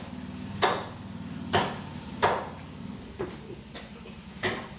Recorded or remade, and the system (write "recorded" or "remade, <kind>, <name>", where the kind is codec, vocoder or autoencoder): recorded